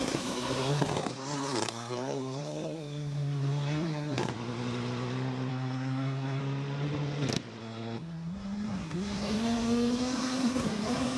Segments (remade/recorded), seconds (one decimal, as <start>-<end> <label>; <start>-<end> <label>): 0.0-4.3 remade; 4.3-5.5 recorded; 5.5-6.4 remade; 6.4-7.6 recorded; 7.6-11.2 remade